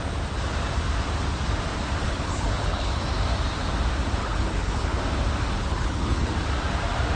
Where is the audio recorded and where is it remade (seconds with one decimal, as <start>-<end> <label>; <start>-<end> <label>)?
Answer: 0.0-2.0 recorded; 2.0-3.0 remade; 3.0-4.2 recorded; 4.2-5.0 remade; 5.0-5.6 recorded; 5.6-6.3 remade; 6.3-7.2 recorded